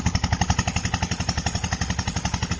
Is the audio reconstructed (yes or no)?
no